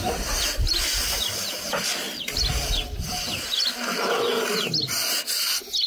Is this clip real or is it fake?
real